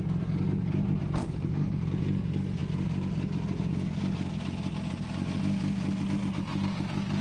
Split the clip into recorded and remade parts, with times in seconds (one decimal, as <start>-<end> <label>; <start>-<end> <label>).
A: 0.0-1.2 recorded; 1.2-1.8 remade; 1.8-7.2 recorded